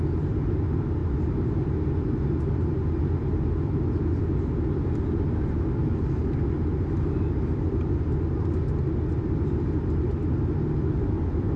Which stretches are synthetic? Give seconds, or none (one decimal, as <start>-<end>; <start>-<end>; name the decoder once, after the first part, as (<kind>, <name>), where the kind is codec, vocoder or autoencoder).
none